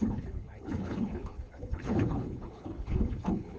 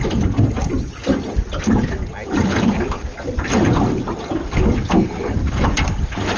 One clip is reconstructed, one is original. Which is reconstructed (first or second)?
first